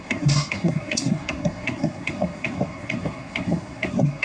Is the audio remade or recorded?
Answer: remade